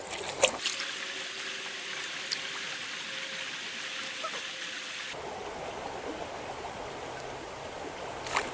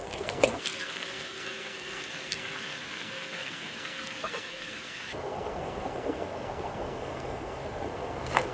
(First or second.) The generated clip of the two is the second